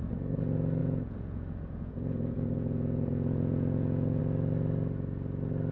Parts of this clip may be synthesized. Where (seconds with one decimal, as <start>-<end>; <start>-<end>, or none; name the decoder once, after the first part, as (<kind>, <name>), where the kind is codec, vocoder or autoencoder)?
0.8-4.2 (vocoder, Vocos)